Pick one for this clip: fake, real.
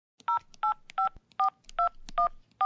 real